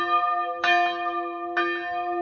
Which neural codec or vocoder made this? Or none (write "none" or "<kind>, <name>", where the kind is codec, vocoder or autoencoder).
none